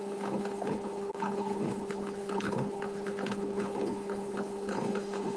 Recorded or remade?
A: remade